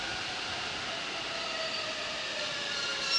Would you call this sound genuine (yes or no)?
yes